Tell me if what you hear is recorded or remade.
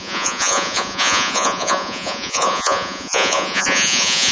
remade